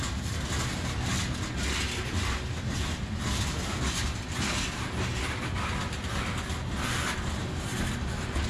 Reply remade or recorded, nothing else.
recorded